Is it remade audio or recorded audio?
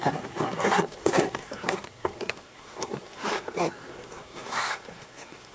remade